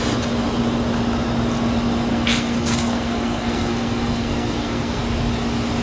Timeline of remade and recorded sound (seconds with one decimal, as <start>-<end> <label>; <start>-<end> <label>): 0.0-2.1 recorded; 2.1-5.0 remade; 5.0-5.8 recorded